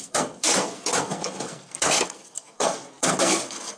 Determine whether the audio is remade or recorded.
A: remade